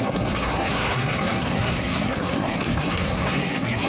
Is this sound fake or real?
fake